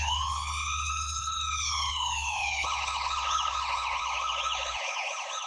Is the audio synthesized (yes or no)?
yes